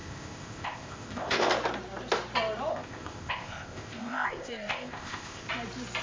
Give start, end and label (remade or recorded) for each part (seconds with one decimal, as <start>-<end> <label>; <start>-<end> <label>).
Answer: 0.0-1.5 remade; 1.5-2.7 recorded; 2.7-5.5 remade; 5.5-6.0 recorded